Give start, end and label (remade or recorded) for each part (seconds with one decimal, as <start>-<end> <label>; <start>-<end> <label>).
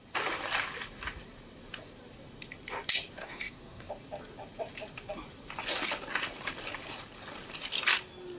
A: 0.0-3.2 recorded; 3.2-3.9 remade; 3.9-8.4 recorded